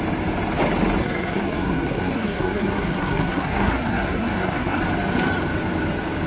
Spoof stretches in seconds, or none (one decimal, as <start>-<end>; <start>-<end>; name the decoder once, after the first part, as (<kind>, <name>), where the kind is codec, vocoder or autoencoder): 1.0-4.8 (codec, SNAC)